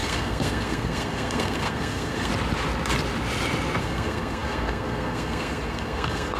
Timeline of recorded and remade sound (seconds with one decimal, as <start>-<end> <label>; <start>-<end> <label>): 0.0-2.3 remade; 2.3-3.8 recorded; 3.8-6.4 remade

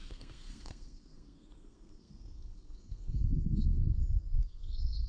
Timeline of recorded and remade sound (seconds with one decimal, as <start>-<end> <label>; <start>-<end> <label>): 0.0-5.1 remade